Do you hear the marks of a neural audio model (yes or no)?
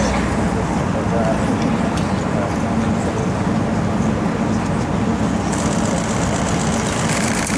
no